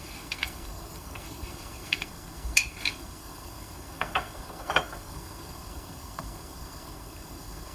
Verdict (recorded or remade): remade